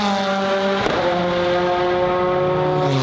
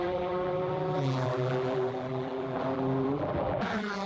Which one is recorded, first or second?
first